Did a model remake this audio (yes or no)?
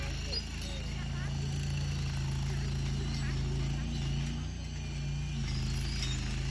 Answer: no